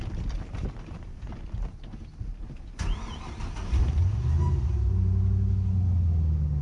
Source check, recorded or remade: recorded